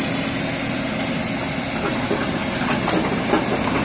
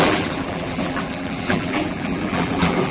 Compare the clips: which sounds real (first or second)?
first